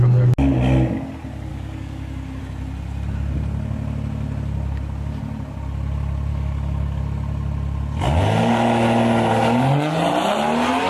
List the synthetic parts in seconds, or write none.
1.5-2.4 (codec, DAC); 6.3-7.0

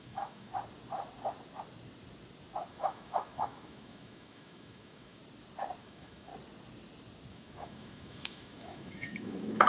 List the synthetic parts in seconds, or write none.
0.0-0.5 (autoencoder, DAC-VAE); 2.7-5.2; 5.8-6.3; 7.3-9.7